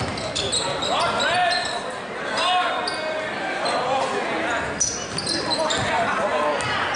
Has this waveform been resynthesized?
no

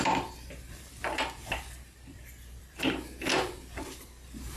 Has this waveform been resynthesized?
yes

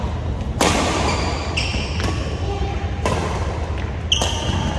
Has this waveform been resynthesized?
no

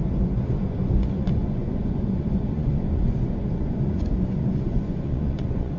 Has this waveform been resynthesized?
yes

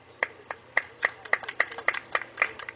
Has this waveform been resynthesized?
no